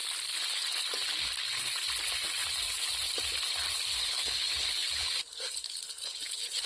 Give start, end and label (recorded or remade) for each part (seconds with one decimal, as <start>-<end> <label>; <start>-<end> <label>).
0.0-4.0 recorded; 4.0-6.7 remade